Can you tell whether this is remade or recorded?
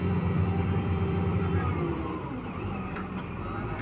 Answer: remade